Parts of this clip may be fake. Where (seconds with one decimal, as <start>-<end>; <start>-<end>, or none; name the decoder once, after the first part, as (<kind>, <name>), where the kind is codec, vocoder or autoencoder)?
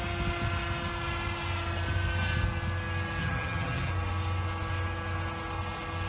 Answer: 3.2-3.9 (vocoder, HiFi-GAN)